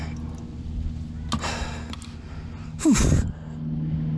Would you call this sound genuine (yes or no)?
yes